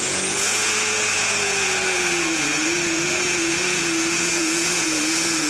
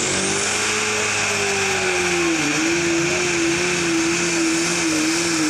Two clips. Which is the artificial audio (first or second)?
first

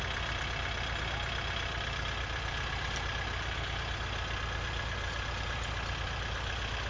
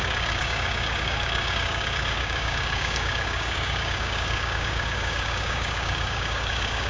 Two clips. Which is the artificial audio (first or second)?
second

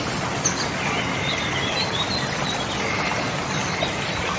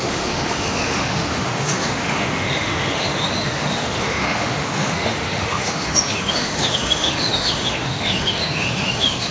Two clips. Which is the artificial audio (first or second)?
second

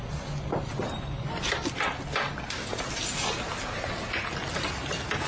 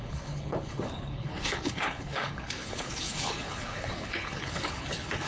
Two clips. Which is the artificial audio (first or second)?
second